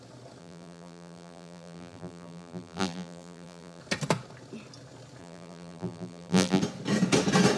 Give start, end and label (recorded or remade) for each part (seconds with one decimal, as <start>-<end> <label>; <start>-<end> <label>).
0.0-0.4 recorded; 0.4-3.8 remade; 3.8-5.2 recorded; 5.2-6.6 remade; 6.6-7.6 recorded